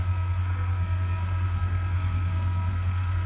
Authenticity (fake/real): fake